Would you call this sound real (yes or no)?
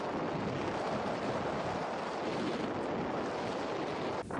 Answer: yes